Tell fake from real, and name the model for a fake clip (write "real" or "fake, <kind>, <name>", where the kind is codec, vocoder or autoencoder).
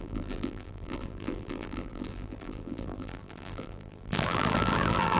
fake, vocoder, BigVGAN v2